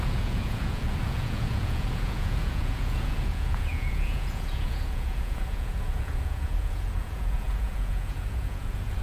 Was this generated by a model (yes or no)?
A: yes